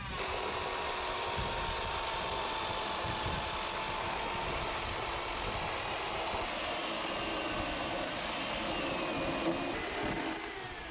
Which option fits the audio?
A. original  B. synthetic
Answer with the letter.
A